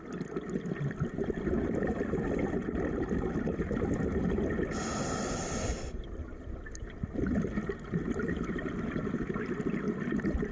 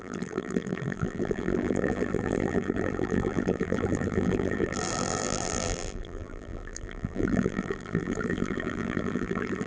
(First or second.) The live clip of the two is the first